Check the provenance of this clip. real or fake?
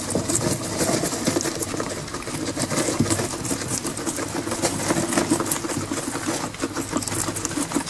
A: real